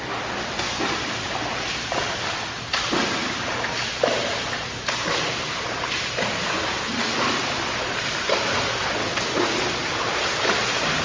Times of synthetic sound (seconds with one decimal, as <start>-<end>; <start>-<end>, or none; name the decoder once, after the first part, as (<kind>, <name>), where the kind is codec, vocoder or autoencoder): none